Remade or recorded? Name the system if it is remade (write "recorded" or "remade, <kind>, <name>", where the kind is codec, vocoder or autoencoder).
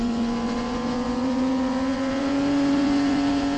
remade, vocoder, Vocos